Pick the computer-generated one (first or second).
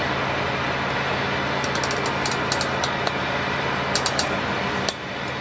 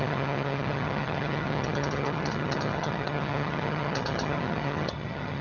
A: second